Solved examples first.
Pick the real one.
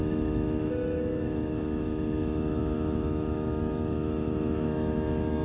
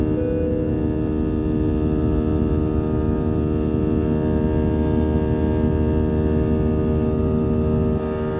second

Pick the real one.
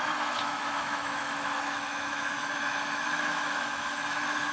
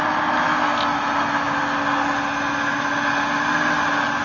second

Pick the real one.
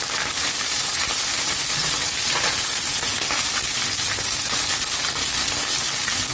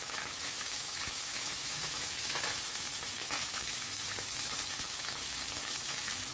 first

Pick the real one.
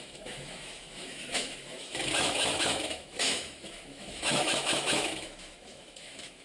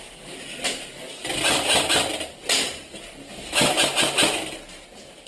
second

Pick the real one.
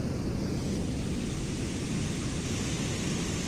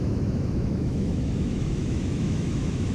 first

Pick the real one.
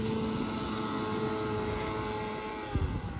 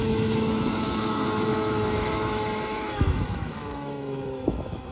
first